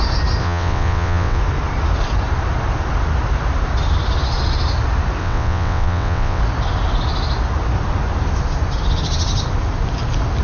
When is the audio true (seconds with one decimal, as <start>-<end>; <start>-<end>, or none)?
0.0-0.4; 1.4-5.2; 6.4-10.4